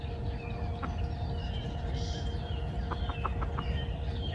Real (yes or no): yes